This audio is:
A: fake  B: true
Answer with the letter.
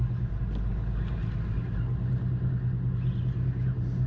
B